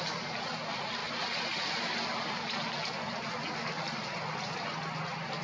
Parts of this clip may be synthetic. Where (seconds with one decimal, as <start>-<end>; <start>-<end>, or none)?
none